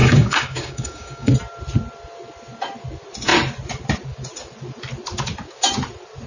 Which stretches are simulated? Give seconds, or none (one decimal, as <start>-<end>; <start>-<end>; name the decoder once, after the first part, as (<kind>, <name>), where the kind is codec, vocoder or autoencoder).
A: 0.0-1.3 (codec, DAC)